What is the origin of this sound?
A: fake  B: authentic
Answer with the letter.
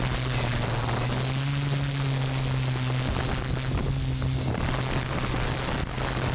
B